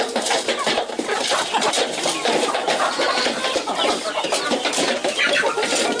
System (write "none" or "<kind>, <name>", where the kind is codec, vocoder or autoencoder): vocoder, BigVGAN v2